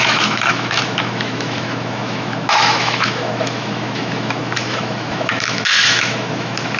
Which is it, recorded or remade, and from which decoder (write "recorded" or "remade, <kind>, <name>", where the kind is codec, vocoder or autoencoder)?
remade, autoencoder, DAC-VAE